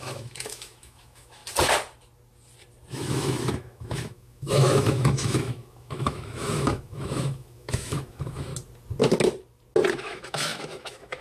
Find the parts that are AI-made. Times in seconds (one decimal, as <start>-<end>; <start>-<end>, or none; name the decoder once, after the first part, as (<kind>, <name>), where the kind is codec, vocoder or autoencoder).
0.0-1.4 (autoencoder, DAC-VAE); 2.9-8.5; 9.9-11.2